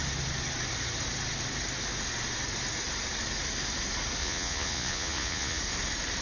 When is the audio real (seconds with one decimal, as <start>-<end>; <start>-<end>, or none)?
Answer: 0.0-4.2; 5.6-6.2